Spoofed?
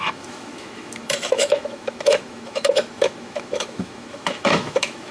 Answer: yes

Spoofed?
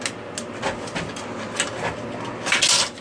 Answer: no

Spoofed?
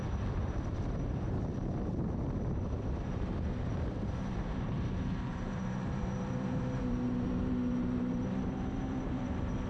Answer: yes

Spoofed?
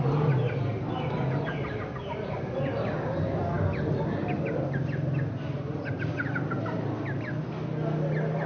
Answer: no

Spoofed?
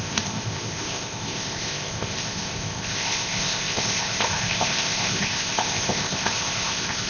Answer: yes